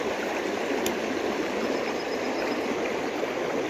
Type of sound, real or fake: real